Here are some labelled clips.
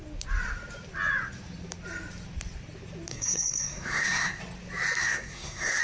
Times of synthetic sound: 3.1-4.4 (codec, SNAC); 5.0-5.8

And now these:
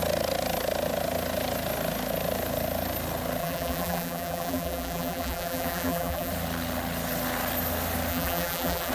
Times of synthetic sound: 3.4-6.3 (vocoder, BigVGAN v2); 8.1-8.9

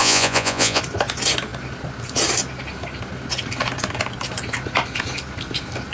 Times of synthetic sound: 0.0-0.8 (vocoder, Vocos)

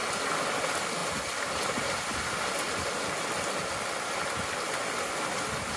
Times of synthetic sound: none

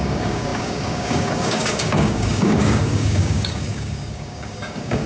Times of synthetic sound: 0.0-5.1 (codec, DAC)

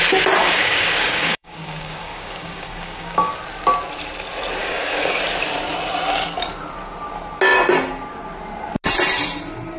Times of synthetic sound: 0.4-3.4 (codec, DAC); 4.6-5.2

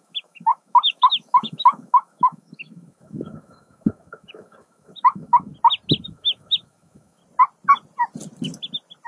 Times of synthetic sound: 0.0-5.5 (autoencoder, DAC-VAE); 6.0-7.2

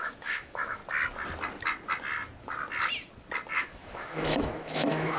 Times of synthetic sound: 0.0-0.8 (autoencoder, DAC-VAE); 3.6-5.2